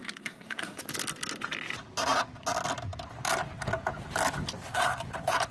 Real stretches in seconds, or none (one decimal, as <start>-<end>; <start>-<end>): 0.8-5.5

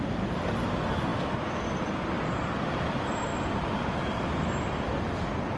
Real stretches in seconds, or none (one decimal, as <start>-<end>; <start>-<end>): 0.0-5.6

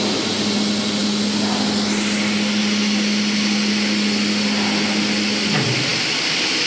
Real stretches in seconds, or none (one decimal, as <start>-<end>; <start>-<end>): 0.0-6.7

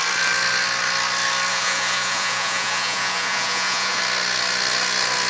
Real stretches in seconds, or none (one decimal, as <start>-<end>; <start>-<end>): 0.0-1.5; 4.0-5.3

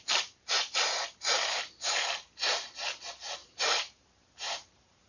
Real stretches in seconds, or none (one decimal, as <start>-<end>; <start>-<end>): 0.0-3.4